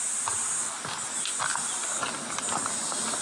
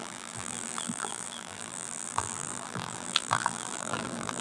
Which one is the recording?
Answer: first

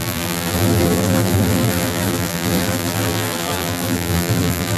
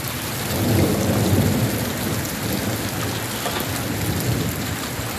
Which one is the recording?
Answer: second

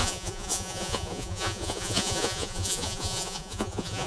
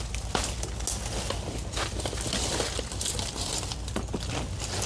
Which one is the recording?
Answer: second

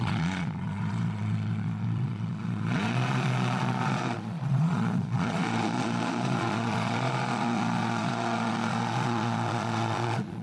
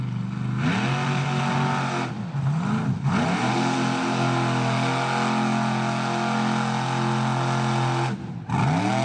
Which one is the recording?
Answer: second